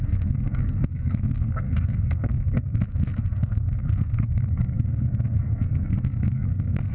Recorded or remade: remade